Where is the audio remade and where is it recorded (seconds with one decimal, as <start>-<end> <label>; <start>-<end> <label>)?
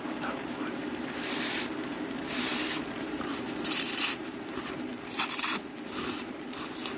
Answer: 0.0-4.9 remade; 4.9-6.0 recorded; 6.0-7.0 remade